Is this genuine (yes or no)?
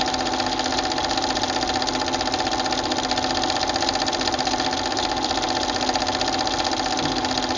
yes